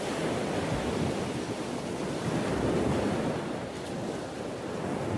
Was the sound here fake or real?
real